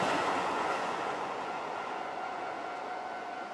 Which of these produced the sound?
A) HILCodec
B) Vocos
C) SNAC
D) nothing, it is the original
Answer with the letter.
B